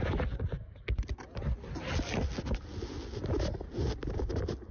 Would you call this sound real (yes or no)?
yes